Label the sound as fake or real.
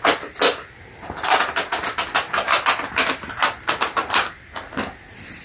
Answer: real